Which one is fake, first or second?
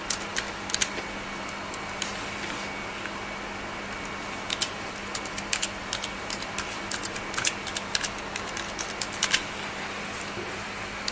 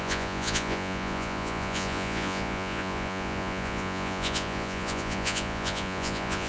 second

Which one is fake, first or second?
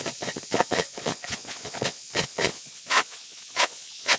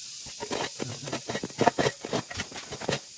first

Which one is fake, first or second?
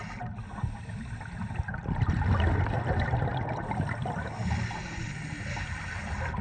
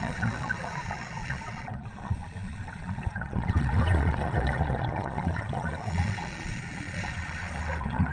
second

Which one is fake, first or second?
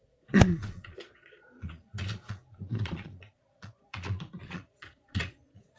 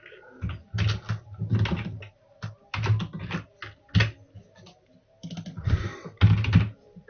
first